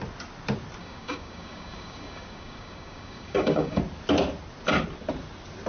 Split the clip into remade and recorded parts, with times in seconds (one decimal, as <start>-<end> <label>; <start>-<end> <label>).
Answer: 0.0-0.8 recorded; 0.8-3.8 remade; 3.8-5.7 recorded